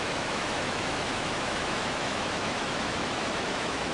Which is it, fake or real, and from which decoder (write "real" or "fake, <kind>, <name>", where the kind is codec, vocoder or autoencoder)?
fake, autoencoder, DAC-VAE